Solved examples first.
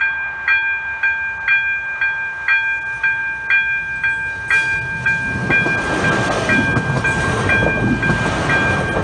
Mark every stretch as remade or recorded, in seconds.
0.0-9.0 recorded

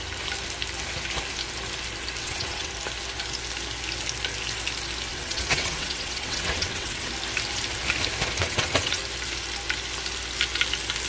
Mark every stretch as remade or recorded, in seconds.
0.0-2.2 recorded; 2.2-2.7 remade; 2.7-5.1 recorded; 5.1-7.1 remade; 7.1-8.4 recorded; 8.4-9.0 remade; 9.0-11.1 recorded

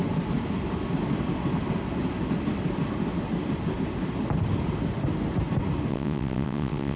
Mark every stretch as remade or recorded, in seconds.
0.0-5.9 recorded; 5.9-7.0 remade

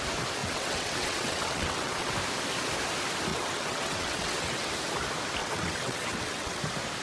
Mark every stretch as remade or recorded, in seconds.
0.0-0.4 recorded; 0.4-2.1 remade; 2.1-3.3 recorded; 3.3-4.7 remade; 4.7-5.4 recorded; 5.4-6.6 remade; 6.6-7.0 recorded

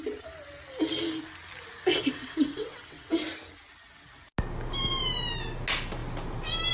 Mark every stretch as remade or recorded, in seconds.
0.0-1.9 recorded; 1.9-3.3 remade; 3.3-6.7 recorded

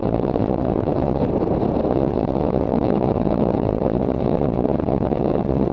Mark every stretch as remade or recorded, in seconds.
0.0-1.2 remade; 1.2-1.9 recorded; 1.9-5.7 remade

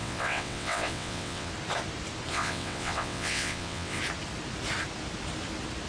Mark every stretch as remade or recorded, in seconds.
0.0-1.5 remade; 1.5-2.3 recorded; 2.3-4.0 remade; 4.0-5.9 recorded

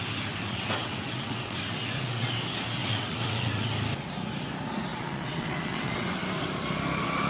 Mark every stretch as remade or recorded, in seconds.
0.0-0.4 recorded; 0.4-2.3 remade; 2.3-2.8 recorded; 2.8-3.7 remade; 3.7-4.9 recorded; 4.9-6.2 remade; 6.2-7.3 recorded